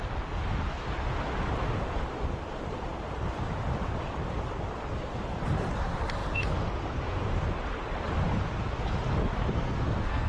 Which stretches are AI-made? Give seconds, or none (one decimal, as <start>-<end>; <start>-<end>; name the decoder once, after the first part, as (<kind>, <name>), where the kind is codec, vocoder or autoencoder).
9.5-10.3 (codec, SNAC)